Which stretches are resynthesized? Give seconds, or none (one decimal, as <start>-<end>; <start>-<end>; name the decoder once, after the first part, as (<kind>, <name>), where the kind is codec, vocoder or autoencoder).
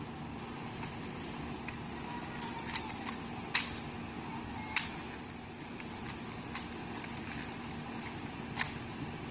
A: none